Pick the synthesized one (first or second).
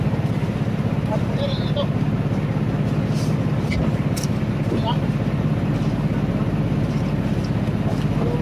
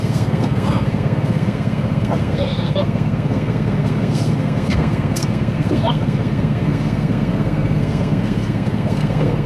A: second